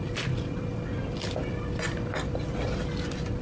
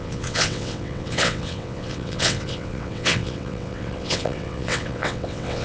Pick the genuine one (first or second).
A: first